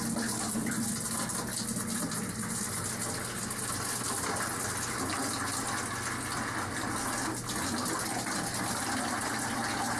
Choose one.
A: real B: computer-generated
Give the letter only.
A